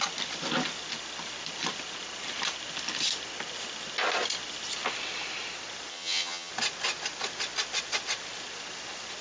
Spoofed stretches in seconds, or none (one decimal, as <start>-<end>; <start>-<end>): 5.9-6.5